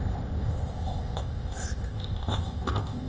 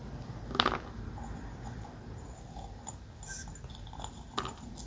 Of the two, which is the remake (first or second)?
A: first